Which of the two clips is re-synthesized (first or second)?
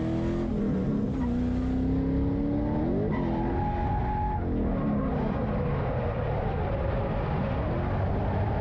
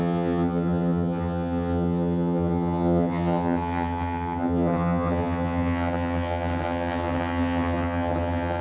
second